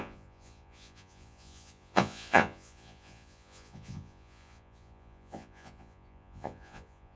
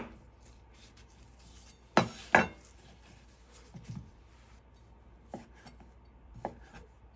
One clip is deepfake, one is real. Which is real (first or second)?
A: second